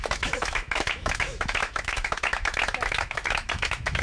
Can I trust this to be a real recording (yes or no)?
no